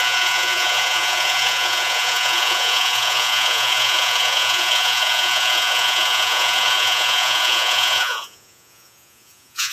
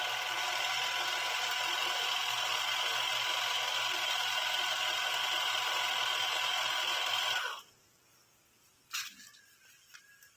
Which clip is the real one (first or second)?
second